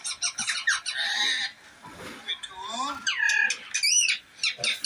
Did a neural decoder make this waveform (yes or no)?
no